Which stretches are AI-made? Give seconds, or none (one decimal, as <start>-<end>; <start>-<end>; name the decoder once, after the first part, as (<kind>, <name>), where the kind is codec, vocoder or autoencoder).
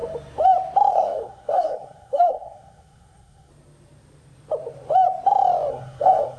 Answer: 0.9-3.5 (codec, SNAC); 5.7-6.4